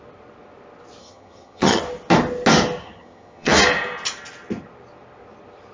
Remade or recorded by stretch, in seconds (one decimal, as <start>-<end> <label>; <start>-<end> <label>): 0.0-1.0 recorded; 1.0-1.8 remade; 1.8-2.8 recorded; 2.8-3.5 remade; 3.5-5.7 recorded